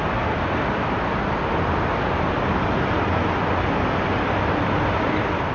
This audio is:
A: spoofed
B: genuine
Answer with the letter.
B